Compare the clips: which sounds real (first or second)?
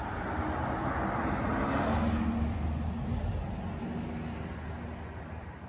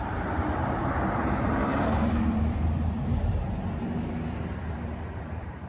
first